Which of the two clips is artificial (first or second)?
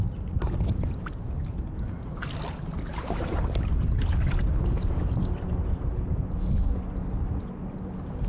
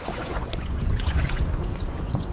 second